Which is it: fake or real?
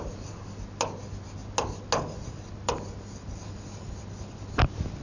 real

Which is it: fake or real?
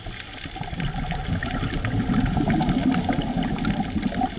real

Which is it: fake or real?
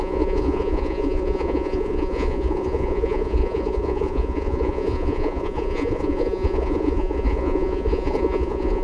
fake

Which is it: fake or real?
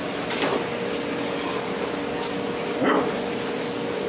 real